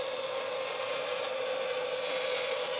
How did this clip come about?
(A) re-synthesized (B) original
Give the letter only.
B